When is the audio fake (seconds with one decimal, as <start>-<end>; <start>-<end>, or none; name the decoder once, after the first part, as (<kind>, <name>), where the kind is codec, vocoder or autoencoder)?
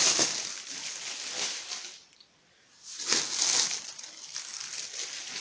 none